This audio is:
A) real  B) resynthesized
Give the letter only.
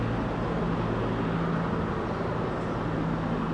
A